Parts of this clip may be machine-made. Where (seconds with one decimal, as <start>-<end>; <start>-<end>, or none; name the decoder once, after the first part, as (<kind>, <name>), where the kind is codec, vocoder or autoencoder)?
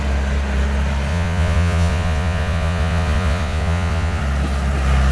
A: 1.1-4.2 (vocoder, Vocos)